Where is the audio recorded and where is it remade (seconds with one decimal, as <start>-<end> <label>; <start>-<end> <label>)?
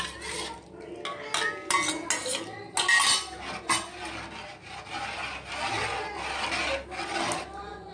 0.0-7.9 recorded